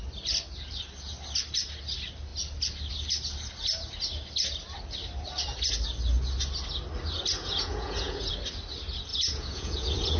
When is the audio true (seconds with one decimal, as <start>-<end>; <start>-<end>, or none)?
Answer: 0.0-7.4; 8.3-9.1